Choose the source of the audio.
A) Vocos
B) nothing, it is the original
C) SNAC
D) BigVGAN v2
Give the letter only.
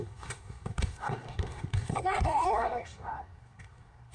C